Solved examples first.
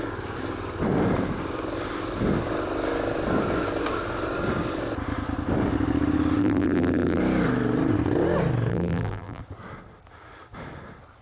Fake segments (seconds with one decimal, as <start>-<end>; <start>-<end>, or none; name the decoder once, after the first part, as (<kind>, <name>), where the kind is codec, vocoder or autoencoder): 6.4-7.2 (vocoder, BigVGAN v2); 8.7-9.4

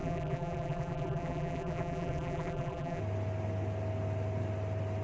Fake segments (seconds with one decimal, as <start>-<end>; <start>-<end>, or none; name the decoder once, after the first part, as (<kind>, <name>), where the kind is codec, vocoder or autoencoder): 0.0-3.0 (vocoder, BigVGAN v2)

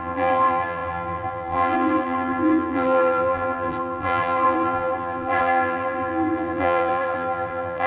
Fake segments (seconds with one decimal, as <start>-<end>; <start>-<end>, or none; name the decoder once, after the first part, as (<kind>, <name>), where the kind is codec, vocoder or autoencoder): 0.0-7.9 (vocoder, BigVGAN v2)

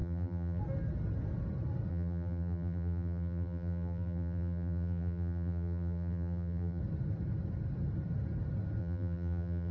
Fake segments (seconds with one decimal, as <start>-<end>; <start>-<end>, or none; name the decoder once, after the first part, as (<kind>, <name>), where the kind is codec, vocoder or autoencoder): 0.0-0.6 (vocoder, BigVGAN v2); 1.9-6.8; 8.8-9.7